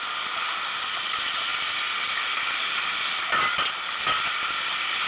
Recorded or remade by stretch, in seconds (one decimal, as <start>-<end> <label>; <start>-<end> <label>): 0.0-5.1 recorded